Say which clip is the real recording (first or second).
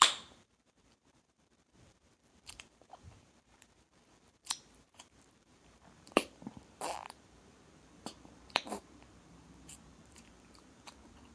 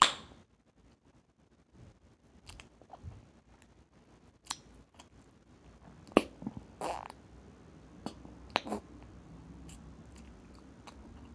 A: second